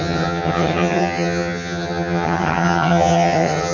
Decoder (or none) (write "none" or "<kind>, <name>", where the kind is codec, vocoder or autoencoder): vocoder, HiFi-GAN